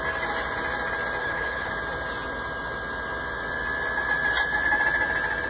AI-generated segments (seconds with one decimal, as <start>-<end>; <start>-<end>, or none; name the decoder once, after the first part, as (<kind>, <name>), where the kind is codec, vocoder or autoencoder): 1.2-1.7 (codec, HILCodec)